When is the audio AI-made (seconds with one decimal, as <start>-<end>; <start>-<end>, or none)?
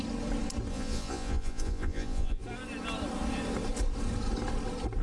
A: 0.7-2.4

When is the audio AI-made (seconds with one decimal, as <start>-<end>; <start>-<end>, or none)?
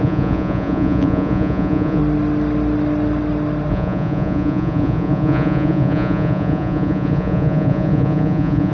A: 0.0-2.0; 3.7-8.7